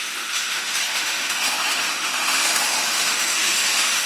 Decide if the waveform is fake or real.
fake